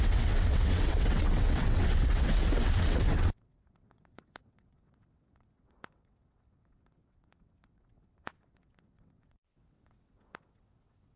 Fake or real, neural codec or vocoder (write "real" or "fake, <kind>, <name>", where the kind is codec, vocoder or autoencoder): fake, vocoder, WaveNeXt